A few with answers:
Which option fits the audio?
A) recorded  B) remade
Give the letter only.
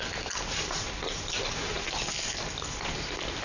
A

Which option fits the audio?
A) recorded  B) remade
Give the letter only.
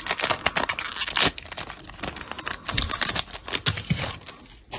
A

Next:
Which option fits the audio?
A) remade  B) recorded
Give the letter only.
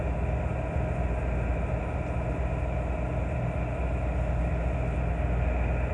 B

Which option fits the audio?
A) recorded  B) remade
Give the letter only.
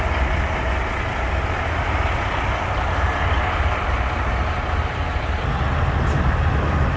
A